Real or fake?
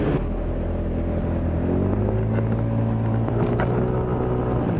real